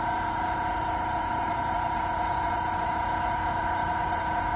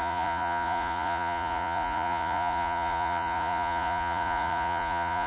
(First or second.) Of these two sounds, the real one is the first